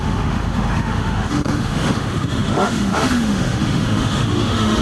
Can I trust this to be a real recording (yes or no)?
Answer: no